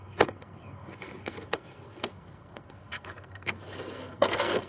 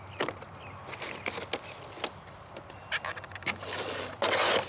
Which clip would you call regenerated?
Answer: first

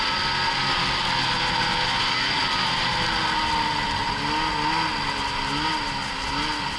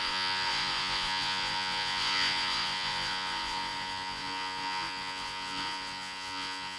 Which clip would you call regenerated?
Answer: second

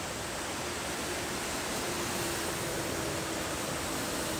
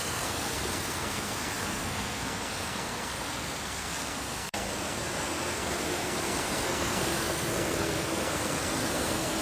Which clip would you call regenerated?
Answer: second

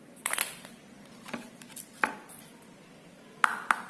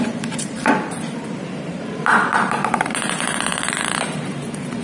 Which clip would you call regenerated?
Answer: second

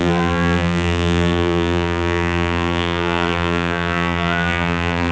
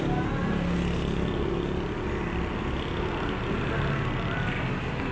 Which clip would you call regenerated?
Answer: first